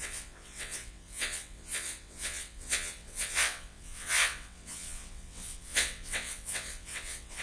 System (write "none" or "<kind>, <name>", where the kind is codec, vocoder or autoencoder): vocoder, WaveNeXt